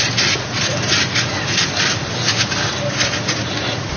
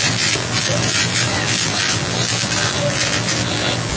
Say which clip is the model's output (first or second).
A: second